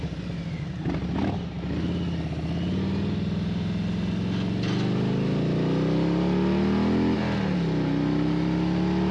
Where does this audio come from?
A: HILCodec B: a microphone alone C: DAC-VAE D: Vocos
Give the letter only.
B